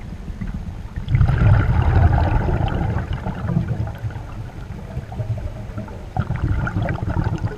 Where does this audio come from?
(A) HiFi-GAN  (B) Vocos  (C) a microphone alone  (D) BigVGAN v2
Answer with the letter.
C